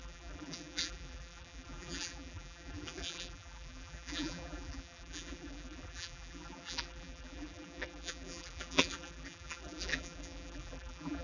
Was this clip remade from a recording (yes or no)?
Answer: yes